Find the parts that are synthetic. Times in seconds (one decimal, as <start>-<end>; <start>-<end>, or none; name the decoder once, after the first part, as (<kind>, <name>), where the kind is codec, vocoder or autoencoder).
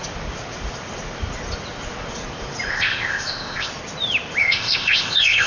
2.7-3.7 (codec, ZipCodec); 4.4-5.5